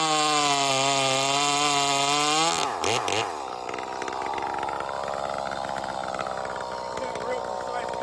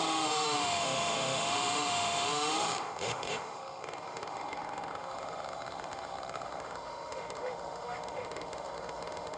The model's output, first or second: second